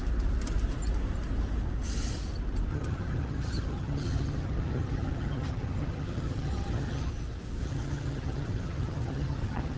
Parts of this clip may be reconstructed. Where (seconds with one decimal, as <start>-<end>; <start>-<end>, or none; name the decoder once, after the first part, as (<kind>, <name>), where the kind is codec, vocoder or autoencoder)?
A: 2.7-7.1 (vocoder, HiFi-GAN); 7.6-9.8